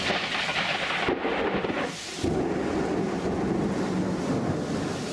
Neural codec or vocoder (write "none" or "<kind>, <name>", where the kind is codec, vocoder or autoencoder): none